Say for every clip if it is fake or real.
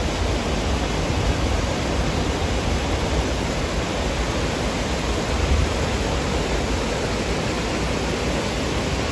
real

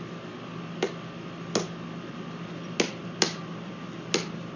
real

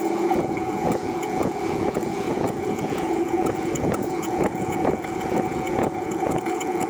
fake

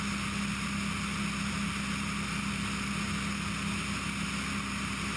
real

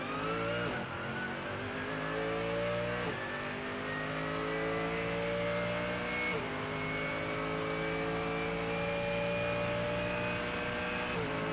real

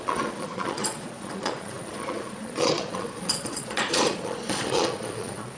fake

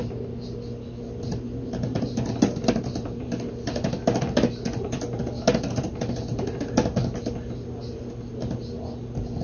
real